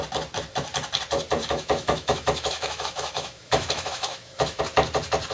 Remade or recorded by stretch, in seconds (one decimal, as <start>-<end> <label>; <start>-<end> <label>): 0.0-1.4 recorded; 1.4-4.6 remade; 4.6-5.3 recorded